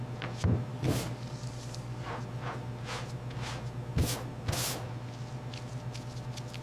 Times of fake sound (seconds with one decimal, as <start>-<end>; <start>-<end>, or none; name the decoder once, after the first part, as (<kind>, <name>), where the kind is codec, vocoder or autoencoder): 0.7-2.1 (codec, DAC)